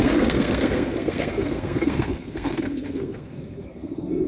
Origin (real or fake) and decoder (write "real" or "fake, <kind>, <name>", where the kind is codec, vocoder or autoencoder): fake, codec, SNAC